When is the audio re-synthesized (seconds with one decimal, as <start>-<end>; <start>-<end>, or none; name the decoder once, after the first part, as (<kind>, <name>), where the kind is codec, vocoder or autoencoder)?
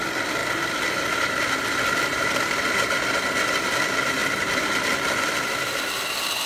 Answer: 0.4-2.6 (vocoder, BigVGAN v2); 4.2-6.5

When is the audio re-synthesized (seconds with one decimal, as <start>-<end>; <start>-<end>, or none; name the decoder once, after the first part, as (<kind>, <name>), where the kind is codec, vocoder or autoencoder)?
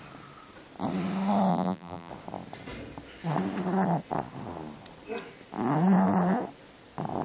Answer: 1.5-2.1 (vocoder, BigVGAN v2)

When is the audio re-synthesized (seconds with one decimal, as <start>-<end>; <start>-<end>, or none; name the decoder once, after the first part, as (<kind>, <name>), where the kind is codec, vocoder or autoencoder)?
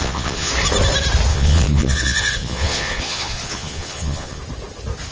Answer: 0.0-0.5 (vocoder, Vocos); 1.3-4.4